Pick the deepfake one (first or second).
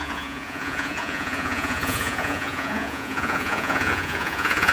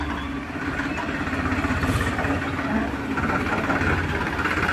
first